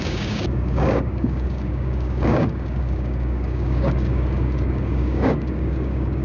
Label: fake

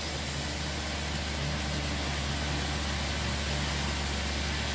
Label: real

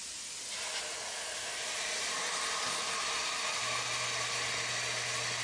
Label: real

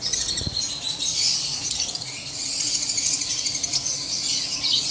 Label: fake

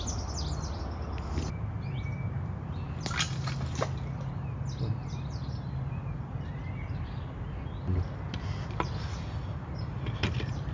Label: real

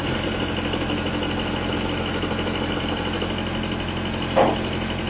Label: real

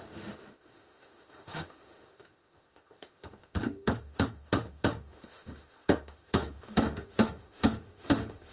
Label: fake